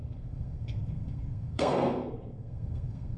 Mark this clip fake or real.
fake